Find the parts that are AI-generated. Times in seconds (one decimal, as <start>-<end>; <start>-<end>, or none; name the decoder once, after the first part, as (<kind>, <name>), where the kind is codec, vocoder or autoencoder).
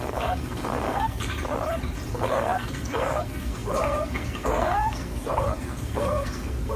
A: 0.0-1.3 (codec, SNAC); 2.1-6.8